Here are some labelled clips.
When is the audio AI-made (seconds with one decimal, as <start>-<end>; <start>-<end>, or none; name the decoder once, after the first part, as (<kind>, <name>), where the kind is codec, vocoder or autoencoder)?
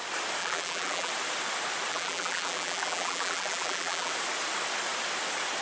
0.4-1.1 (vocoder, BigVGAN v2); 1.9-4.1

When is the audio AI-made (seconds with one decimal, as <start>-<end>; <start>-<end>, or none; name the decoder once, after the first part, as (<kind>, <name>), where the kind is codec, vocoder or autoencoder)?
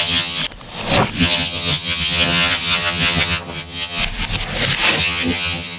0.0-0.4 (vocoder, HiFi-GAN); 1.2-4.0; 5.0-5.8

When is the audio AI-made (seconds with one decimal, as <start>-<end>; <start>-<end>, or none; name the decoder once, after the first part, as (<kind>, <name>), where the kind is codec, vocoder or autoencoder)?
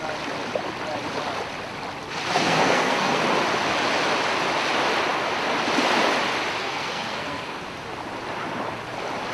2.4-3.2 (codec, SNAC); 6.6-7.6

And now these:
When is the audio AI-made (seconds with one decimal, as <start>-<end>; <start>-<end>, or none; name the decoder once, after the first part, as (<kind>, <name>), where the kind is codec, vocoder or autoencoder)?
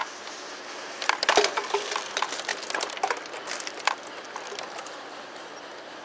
0.7-2.5 (vocoder, BigVGAN v2)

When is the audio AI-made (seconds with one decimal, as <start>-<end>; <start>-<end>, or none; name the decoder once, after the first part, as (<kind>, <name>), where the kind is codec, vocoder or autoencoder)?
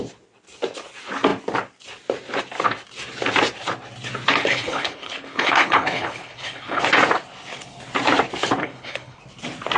4.4-6.8 (codec, HILCodec); 8.6-9.2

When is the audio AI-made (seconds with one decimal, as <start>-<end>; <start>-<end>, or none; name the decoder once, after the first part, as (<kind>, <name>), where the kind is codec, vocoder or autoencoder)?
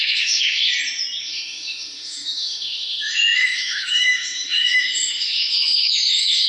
0.0-0.6 (autoencoder, DAC-VAE); 1.2-6.5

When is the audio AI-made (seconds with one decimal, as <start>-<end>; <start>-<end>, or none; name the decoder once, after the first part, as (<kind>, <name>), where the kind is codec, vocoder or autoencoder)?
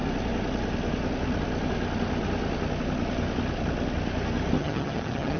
4.6-5.4 (vocoder, HiFi-GAN)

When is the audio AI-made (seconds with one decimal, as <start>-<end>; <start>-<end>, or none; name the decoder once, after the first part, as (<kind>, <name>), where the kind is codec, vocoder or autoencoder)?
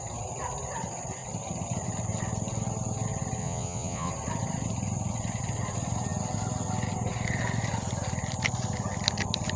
3.4-4.1 (vocoder, Vocos)